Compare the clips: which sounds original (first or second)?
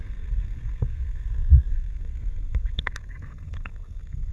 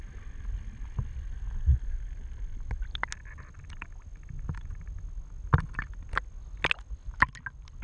second